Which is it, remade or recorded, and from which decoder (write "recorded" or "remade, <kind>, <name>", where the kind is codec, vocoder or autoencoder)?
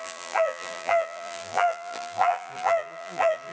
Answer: remade, vocoder, BigVGAN v2